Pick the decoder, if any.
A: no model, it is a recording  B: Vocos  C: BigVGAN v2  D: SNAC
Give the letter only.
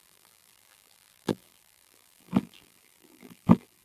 C